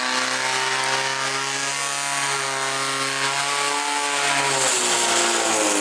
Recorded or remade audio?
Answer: recorded